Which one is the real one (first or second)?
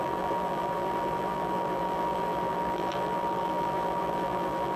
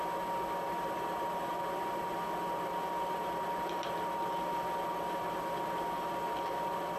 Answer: second